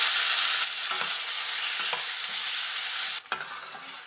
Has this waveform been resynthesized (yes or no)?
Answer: no